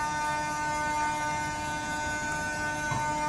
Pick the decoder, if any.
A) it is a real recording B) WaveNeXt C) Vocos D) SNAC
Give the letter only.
A